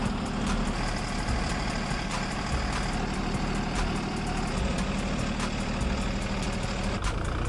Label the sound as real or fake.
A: fake